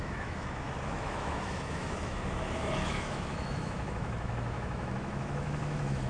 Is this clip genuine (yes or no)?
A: no